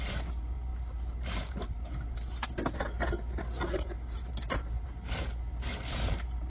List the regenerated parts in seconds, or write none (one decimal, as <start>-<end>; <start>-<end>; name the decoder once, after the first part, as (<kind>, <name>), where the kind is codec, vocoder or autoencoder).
none